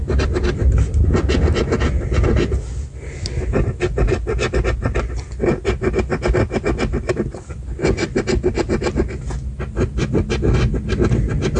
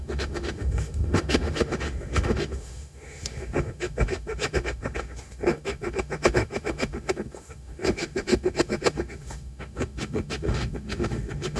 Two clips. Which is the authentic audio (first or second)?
first